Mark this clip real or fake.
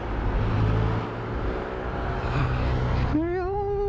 real